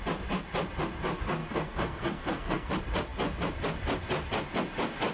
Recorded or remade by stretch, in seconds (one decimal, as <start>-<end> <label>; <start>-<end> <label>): 0.0-1.4 recorded; 1.4-2.7 remade; 2.7-5.1 recorded